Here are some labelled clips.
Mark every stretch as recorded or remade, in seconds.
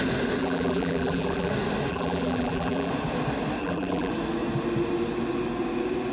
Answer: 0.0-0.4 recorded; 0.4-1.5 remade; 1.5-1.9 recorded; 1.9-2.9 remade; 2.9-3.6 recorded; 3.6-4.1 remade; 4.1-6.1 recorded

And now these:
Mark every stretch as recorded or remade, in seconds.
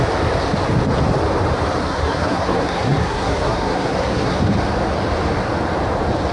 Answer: 0.0-1.8 recorded; 1.8-4.4 remade; 4.4-6.3 recorded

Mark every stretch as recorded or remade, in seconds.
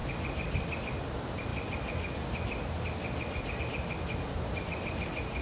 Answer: 0.0-5.4 recorded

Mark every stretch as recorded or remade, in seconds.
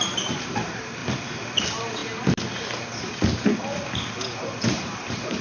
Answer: 0.0-1.0 remade; 1.0-1.6 recorded; 1.6-2.0 remade; 2.0-4.4 recorded; 4.4-5.4 remade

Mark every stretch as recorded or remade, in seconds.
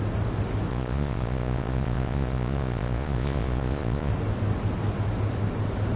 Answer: 0.0-0.7 recorded; 0.7-4.1 remade; 4.1-6.0 recorded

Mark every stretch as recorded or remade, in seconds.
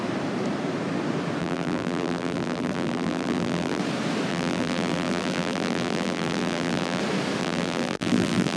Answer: 0.0-1.4 recorded; 1.4-3.8 remade; 3.8-4.3 recorded; 4.3-7.0 remade; 7.0-7.4 recorded; 7.4-8.6 remade